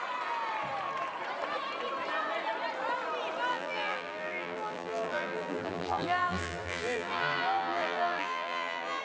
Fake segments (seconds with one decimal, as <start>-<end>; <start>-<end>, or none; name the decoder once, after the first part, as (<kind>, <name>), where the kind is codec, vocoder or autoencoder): 3.5-9.0 (vocoder, BigVGAN v2)